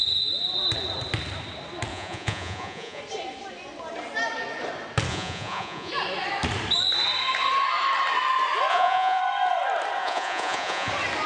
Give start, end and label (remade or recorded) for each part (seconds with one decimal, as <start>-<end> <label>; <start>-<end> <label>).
0.0-1.9 recorded; 1.9-3.0 remade; 3.0-5.1 recorded; 5.1-5.9 remade; 5.9-8.7 recorded; 8.7-9.2 remade; 9.2-10.0 recorded; 10.0-10.9 remade; 10.9-11.3 recorded